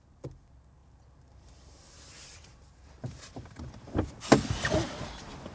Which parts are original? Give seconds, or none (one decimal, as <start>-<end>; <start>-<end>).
0.0-0.8; 4.1-5.5

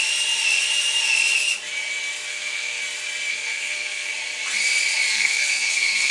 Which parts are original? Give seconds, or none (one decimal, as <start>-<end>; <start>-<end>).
0.0-2.3; 2.8-3.3; 4.1-5.1

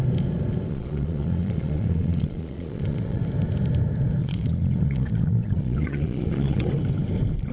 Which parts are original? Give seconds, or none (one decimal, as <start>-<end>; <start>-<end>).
0.0-0.7; 3.2-4.2; 6.7-7.5

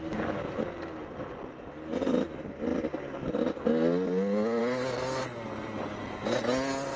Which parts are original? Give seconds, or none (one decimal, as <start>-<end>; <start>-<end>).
0.0-7.0

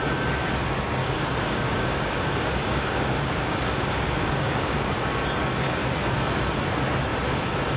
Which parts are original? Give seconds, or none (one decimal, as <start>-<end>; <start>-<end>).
0.0-1.0; 5.1-7.8

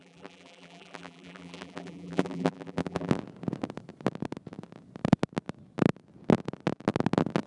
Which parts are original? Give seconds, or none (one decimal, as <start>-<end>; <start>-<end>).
3.1-7.5

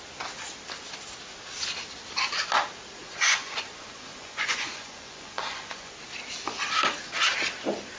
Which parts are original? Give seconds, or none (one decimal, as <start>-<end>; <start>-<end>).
0.0-3.0; 5.9-8.0

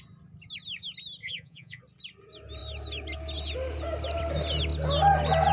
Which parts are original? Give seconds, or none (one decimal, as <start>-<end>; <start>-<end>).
0.0-1.2; 1.8-5.5